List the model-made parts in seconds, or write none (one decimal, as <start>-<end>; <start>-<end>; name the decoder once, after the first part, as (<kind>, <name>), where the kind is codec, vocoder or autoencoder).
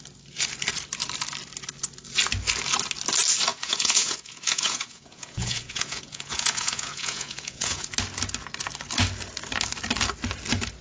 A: 3.5-7.9 (vocoder, Vocos)